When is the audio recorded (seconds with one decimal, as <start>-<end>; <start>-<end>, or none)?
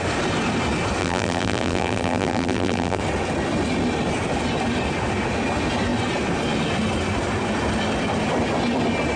0.0-1.0; 3.0-9.2